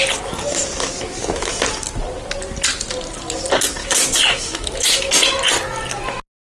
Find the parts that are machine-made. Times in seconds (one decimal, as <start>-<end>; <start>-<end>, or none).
0.9-1.5; 3.8-5.1